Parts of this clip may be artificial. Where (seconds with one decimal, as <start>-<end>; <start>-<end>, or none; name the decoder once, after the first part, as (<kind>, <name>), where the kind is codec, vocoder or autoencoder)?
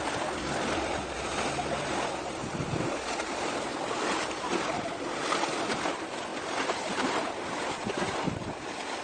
0.0-1.2 (vocoder, BigVGAN v2); 1.9-2.4; 3.7-6.3; 7.6-9.0